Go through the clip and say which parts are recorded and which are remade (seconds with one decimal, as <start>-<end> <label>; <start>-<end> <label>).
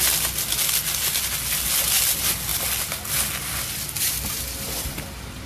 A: 0.0-5.5 recorded